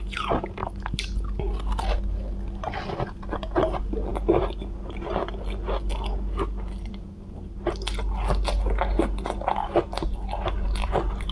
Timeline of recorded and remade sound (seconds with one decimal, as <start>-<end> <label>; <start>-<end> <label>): 0.0-11.3 recorded